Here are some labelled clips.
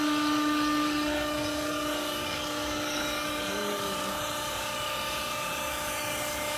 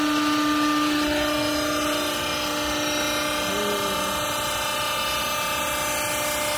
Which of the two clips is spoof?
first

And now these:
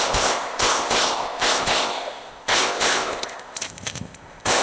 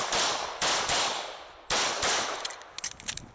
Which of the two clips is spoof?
first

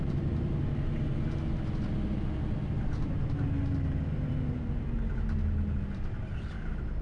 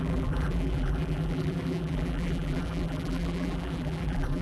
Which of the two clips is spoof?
second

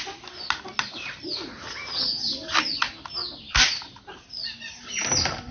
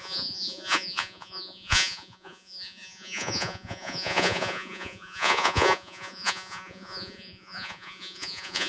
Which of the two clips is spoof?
second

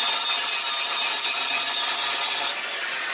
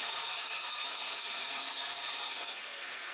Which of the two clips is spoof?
second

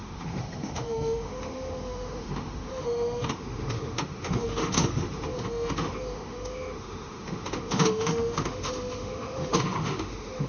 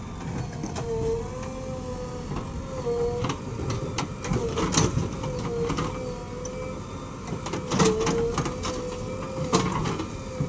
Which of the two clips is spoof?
first